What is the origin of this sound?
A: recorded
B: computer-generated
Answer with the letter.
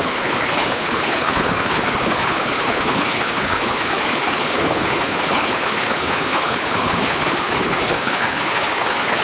B